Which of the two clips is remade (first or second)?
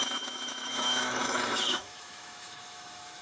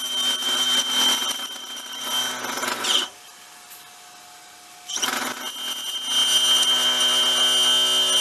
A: first